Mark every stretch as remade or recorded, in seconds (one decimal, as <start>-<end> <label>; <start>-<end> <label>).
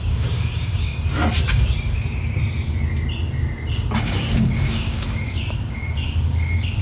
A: 0.0-0.9 remade; 0.9-4.0 recorded; 4.0-6.8 remade